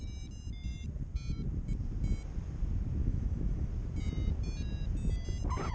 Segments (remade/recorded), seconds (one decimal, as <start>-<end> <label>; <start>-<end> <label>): 0.0-3.0 recorded; 3.0-3.7 remade; 3.7-5.7 recorded